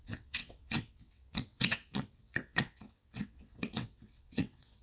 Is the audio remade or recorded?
remade